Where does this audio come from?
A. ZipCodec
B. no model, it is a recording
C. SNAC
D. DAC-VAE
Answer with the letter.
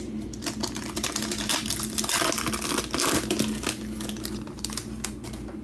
B